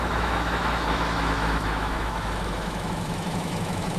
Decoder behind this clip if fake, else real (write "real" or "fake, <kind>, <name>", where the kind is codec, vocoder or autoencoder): fake, autoencoder, DAC-VAE